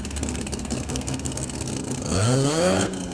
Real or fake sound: fake